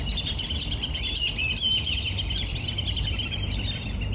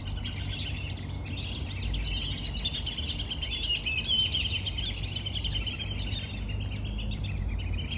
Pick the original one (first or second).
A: second